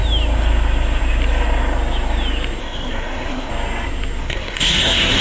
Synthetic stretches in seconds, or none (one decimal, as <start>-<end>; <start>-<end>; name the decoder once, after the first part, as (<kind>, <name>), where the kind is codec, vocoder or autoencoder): 2.6-3.5 (codec, SNAC); 4.2-5.2